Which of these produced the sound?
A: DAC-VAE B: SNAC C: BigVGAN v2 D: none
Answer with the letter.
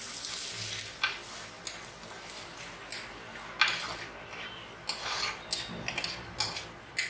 D